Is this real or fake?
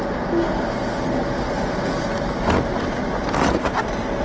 real